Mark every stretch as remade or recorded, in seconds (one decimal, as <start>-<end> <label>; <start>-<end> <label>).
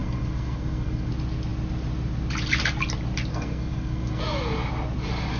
0.0-1.1 remade; 1.1-3.3 recorded; 3.3-4.2 remade; 4.2-5.4 recorded